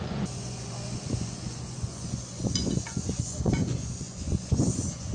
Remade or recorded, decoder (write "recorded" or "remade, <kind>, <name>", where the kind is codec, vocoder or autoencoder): remade, vocoder, Vocos